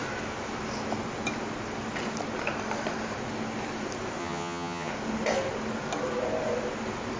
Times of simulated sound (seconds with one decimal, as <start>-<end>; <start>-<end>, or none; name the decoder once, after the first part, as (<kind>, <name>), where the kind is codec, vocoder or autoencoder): 4.2-4.9 (vocoder, HiFi-GAN)